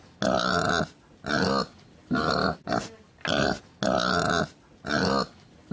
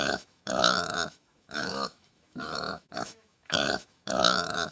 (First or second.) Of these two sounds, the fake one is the second